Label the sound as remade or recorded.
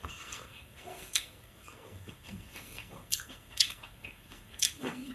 remade